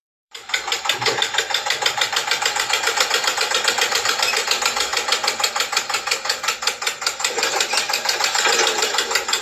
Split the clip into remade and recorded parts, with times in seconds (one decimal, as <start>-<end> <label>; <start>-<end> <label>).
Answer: 0.0-4.9 remade; 4.9-7.2 recorded; 7.2-9.4 remade